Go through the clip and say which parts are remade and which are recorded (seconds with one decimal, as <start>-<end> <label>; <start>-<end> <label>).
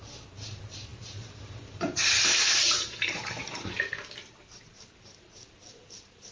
0.0-6.3 remade